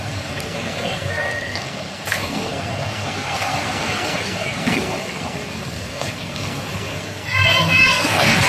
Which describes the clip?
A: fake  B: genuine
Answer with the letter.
A